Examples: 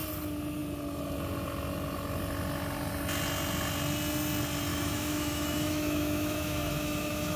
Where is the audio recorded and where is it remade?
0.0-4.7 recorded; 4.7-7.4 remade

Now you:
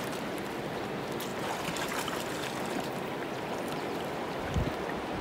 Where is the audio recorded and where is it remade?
0.0-5.2 recorded

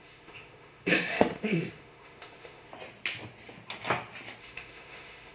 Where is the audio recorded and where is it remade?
0.0-2.7 remade; 2.7-4.4 recorded; 4.4-5.3 remade

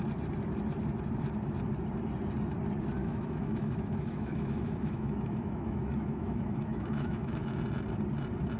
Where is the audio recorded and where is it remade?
0.0-3.0 recorded; 3.0-7.6 remade; 7.6-8.6 recorded